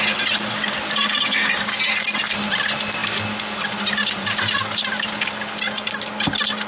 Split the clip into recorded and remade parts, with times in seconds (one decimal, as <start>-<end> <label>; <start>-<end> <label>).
0.0-6.7 recorded